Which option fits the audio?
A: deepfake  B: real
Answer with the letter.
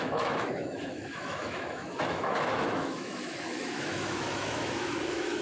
A